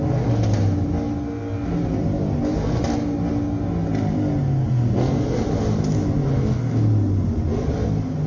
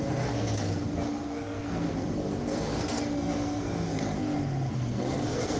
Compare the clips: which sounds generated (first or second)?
second